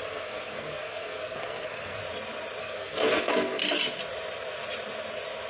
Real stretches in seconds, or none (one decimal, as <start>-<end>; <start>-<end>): 2.0-2.6; 3.6-5.5